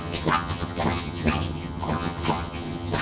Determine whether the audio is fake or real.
fake